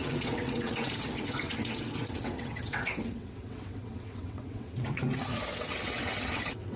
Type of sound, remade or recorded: remade